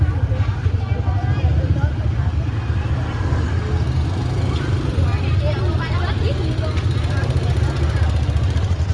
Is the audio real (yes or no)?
yes